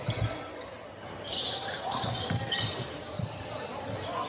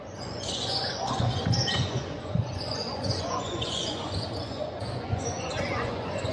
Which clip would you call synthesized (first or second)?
second